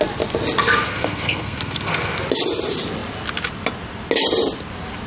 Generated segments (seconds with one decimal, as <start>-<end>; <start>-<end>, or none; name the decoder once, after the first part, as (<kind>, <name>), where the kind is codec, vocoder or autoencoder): 0.6-2.2 (codec, SNAC)